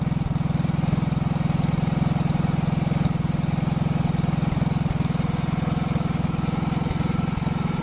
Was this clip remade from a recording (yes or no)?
no